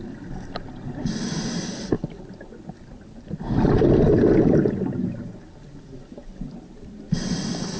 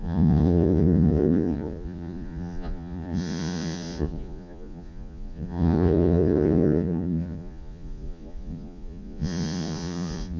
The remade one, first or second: second